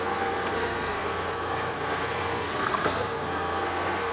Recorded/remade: remade